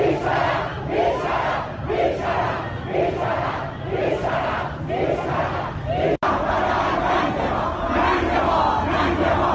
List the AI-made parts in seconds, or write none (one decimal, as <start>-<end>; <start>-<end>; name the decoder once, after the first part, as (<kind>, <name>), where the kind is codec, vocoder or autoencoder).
none